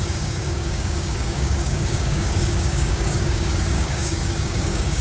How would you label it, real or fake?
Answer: fake